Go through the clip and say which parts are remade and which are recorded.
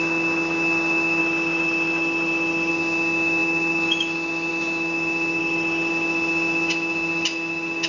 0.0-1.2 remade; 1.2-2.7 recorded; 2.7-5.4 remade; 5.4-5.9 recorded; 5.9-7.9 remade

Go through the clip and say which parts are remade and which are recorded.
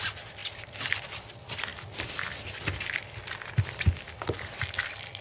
0.0-5.2 recorded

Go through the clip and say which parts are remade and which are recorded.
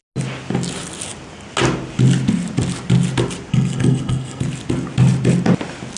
0.0-3.5 recorded; 3.5-4.4 remade; 4.4-6.0 recorded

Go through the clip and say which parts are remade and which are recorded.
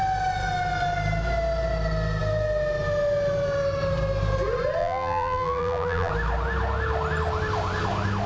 0.0-4.8 recorded; 4.8-6.1 remade; 6.1-8.3 recorded